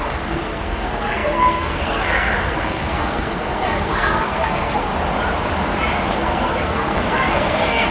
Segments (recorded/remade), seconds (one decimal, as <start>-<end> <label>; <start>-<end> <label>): 0.0-4.9 remade; 4.9-6.1 recorded; 6.1-7.9 remade